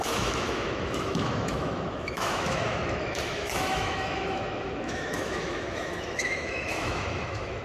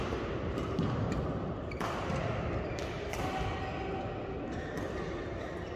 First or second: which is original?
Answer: second